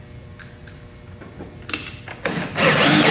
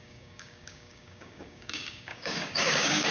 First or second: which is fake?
second